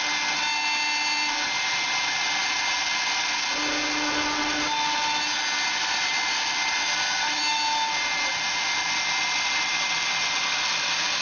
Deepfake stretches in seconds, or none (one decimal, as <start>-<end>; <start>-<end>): none